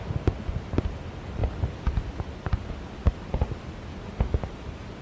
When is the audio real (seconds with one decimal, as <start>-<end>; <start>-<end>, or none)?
0.0-5.0